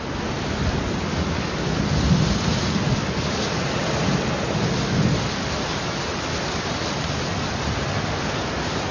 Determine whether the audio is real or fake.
real